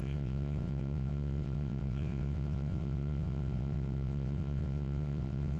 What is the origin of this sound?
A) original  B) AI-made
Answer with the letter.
B